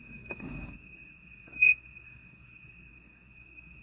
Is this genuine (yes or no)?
no